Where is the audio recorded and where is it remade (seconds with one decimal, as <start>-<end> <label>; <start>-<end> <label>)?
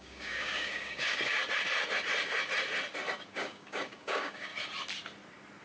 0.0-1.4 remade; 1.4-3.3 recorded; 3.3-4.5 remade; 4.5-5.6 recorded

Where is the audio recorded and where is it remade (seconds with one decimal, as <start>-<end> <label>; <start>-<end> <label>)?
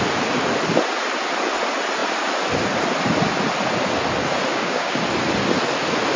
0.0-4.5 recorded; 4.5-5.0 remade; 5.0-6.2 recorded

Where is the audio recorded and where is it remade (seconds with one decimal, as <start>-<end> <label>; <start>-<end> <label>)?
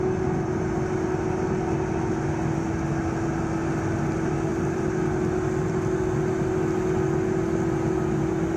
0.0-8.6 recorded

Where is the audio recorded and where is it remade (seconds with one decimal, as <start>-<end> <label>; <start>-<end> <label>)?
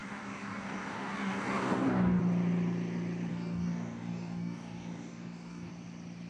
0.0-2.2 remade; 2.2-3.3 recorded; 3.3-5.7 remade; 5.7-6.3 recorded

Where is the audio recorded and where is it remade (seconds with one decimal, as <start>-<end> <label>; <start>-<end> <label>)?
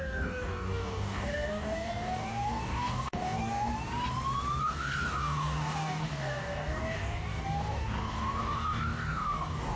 0.0-3.7 remade; 3.7-4.6 recorded; 4.6-9.8 remade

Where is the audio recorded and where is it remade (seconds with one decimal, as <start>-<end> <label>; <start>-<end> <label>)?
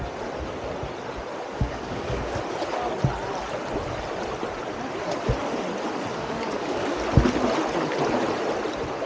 0.0-1.5 recorded; 1.5-2.4 remade; 2.4-6.1 recorded; 6.1-7.0 remade; 7.0-9.1 recorded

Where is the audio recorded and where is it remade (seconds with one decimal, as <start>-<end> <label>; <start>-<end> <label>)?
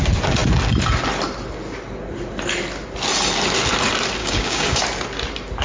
0.0-4.2 recorded; 4.2-4.8 remade; 4.8-5.6 recorded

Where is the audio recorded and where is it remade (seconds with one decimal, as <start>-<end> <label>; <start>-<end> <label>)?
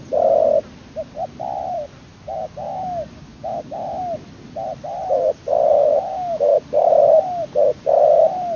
0.0-2.1 recorded; 2.1-4.0 remade; 4.0-6.1 recorded; 6.1-6.9 remade; 6.9-8.6 recorded